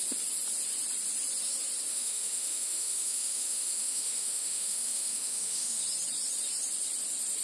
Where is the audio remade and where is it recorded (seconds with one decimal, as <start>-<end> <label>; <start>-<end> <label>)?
0.0-1.9 recorded; 1.9-5.8 remade; 5.8-7.4 recorded